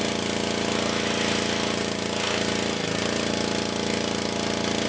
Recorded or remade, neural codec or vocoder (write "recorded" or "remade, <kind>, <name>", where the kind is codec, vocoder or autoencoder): recorded